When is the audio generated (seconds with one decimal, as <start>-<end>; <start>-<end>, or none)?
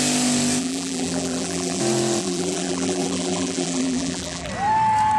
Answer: 0.6-1.8; 2.2-4.5